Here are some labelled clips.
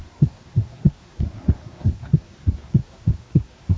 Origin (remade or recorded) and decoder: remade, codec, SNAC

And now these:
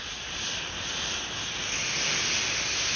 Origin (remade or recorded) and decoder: recorded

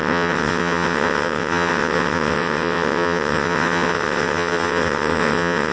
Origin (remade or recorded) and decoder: remade, vocoder, WaveNeXt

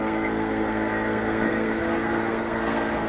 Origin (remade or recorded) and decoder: remade, codec, SNAC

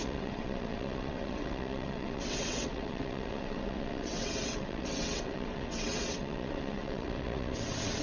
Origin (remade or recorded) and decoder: remade, vocoder, WaveNeXt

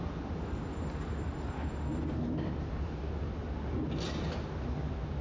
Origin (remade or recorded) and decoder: recorded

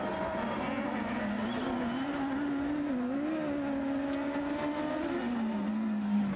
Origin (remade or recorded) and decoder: recorded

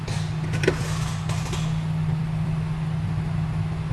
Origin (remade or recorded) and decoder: recorded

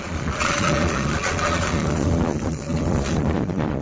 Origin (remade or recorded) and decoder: remade, vocoder, Vocos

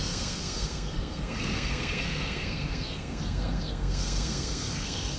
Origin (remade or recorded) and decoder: remade, codec, SNAC